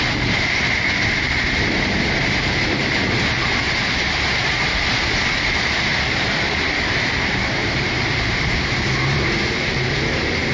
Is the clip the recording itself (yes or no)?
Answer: no